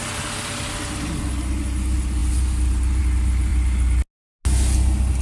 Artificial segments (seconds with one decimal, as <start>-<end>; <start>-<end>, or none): none